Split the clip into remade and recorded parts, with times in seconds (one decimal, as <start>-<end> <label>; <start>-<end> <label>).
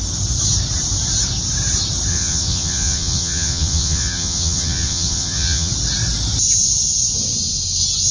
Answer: 0.0-2.1 recorded; 2.1-5.7 remade; 5.7-8.1 recorded